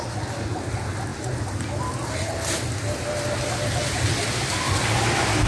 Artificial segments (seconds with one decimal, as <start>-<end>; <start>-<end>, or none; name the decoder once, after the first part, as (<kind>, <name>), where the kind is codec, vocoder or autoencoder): none